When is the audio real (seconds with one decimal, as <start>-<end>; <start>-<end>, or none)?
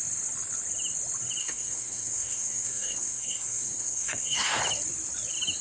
0.0-1.4; 4.6-5.6